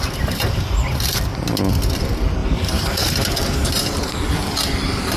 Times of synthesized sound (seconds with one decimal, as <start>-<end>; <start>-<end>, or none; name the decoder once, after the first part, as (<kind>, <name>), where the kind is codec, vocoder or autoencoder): 2.4-4.2 (vocoder, BigVGAN v2)